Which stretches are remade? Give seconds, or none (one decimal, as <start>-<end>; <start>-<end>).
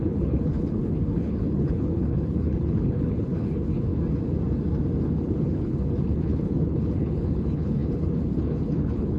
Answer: 0.0-3.9; 5.0-9.2